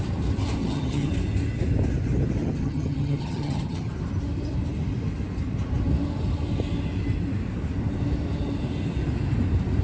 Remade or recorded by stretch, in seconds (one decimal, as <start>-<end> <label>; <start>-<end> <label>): 0.0-0.6 recorded; 0.6-1.1 remade; 1.1-2.4 recorded; 2.4-3.9 remade; 3.9-9.8 recorded